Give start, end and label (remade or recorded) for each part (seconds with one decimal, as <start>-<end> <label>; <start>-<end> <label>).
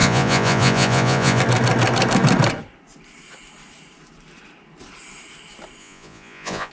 0.0-1.4 remade; 1.4-5.8 recorded; 5.8-6.7 remade